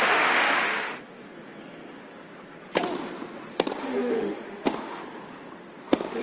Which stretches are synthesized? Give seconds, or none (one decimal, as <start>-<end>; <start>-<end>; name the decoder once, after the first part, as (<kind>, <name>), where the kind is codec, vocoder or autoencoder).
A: 0.0-0.9 (autoencoder, DAC-VAE); 3.8-5.0; 5.8-6.2